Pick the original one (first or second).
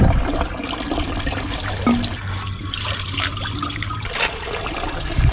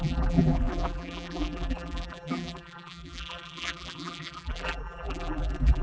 first